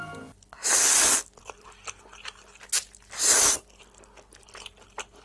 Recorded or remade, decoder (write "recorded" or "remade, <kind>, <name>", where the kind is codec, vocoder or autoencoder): recorded